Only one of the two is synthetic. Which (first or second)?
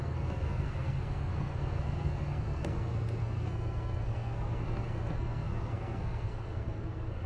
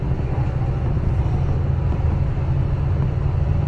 first